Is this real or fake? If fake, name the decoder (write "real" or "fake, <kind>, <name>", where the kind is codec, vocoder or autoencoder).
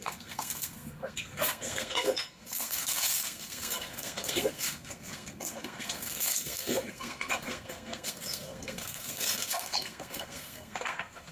fake, codec, SNAC